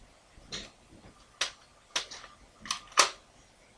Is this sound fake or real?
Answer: real